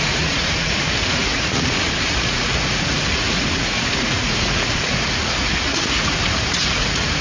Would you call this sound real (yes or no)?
no